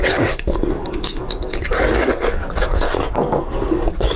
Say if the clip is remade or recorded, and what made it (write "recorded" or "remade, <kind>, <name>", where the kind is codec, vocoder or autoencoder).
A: remade, codec, DAC